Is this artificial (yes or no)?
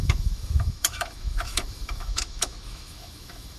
yes